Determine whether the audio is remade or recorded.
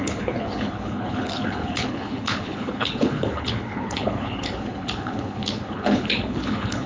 remade